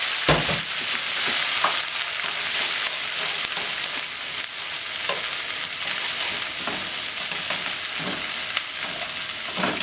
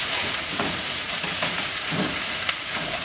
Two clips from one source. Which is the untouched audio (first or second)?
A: first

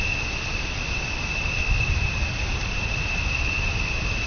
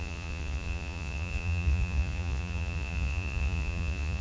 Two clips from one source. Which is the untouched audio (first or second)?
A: first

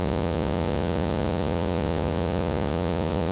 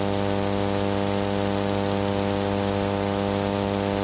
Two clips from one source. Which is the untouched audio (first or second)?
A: second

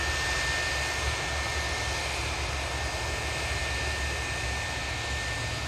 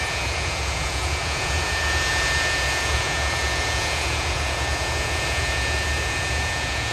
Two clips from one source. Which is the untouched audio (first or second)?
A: first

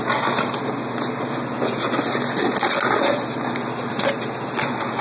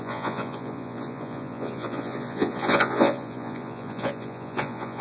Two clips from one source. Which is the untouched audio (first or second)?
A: first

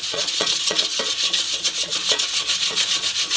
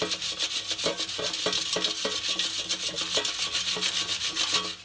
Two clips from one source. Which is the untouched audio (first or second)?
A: second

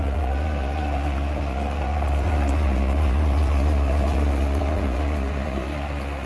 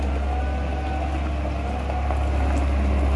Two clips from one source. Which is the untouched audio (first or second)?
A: second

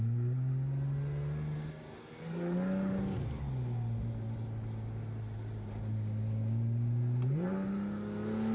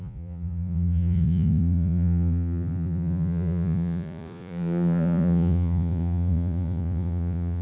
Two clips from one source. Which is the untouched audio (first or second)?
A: first